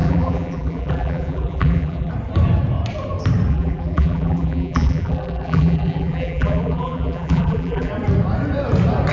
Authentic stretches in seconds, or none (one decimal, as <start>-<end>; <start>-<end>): 2.1-3.5; 7.9-9.1